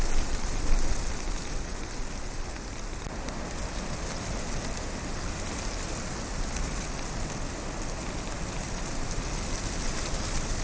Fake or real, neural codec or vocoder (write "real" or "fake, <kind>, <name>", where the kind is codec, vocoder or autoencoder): real